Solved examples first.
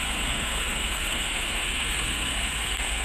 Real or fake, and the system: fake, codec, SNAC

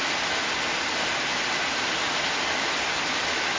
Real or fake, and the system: real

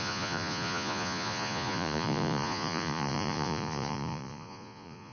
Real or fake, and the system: fake, vocoder, Vocos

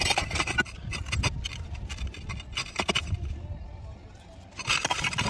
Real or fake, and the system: real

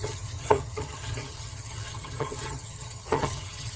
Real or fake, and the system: fake, vocoder, HiFi-GAN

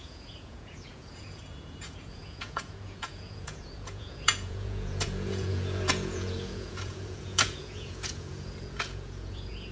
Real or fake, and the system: fake, vocoder, Vocos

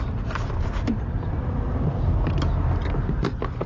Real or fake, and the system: real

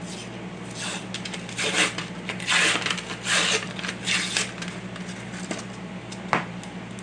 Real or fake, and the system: real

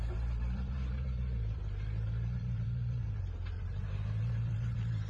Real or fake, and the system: fake, vocoder, BigVGAN v2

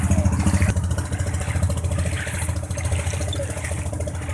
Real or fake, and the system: real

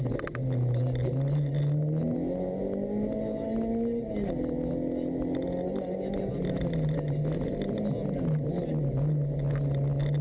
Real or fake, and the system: real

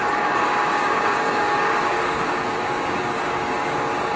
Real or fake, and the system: fake, codec, DAC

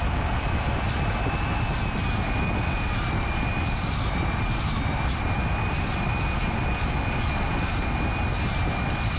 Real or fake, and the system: real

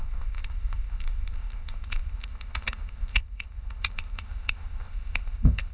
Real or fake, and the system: fake, codec, ZipCodec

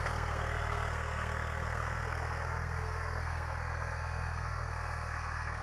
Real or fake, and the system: fake, codec, SNAC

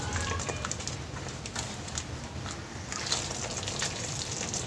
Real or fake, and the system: real